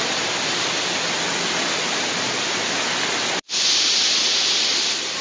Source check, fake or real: real